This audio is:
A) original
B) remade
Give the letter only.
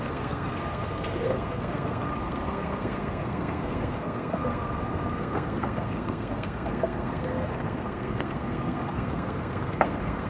B